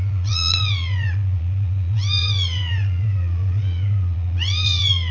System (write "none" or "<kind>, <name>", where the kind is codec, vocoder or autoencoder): vocoder, Vocos